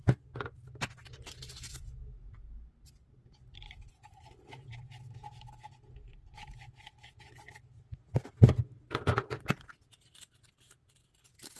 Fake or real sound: real